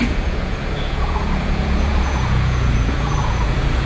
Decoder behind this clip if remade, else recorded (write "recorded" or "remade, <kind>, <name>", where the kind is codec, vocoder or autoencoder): remade, vocoder, Vocos